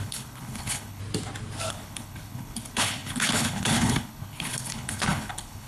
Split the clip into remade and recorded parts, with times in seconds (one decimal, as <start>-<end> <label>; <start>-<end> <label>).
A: 0.0-1.0 remade; 1.0-1.7 recorded; 1.7-5.7 remade